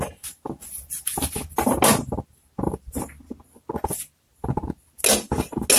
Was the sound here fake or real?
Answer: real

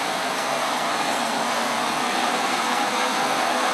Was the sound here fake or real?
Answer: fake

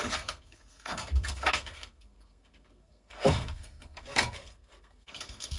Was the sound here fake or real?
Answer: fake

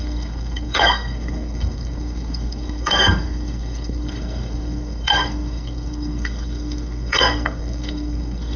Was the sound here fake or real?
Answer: fake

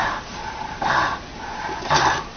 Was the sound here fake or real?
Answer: real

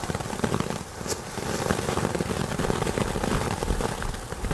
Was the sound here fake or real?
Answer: real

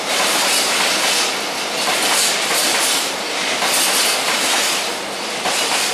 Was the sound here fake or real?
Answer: real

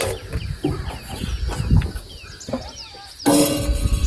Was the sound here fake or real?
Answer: real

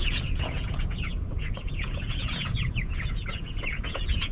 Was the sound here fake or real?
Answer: fake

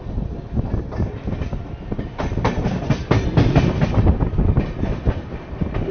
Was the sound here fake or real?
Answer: real